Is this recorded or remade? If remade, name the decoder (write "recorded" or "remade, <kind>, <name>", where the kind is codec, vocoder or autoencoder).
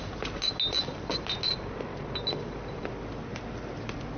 recorded